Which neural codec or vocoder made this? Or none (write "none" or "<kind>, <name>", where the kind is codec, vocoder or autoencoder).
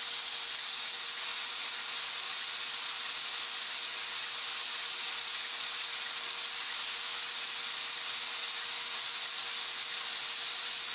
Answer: none